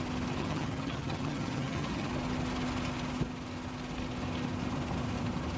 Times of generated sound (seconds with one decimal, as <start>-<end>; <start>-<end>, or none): 0.4-2.1